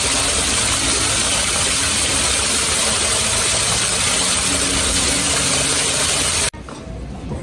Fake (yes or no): no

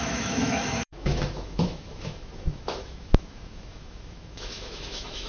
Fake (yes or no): yes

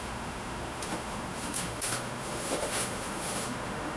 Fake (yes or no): yes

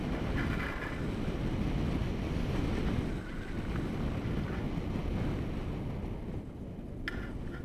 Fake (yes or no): no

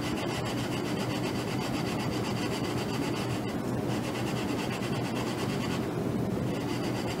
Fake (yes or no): no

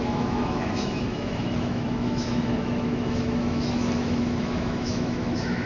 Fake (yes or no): yes